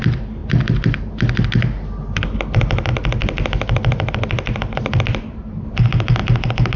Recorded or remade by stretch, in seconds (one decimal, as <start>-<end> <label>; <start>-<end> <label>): 0.0-6.8 recorded